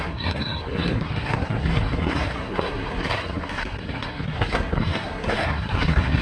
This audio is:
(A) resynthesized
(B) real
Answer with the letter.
A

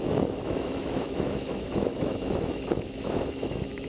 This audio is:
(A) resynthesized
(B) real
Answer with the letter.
A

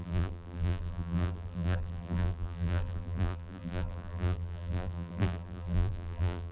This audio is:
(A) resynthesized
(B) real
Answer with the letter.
A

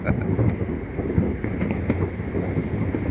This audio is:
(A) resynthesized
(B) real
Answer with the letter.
B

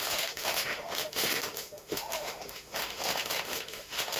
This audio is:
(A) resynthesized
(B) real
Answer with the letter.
A